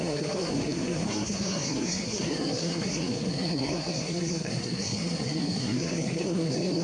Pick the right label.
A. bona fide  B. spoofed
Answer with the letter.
B